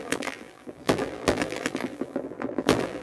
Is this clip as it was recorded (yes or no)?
no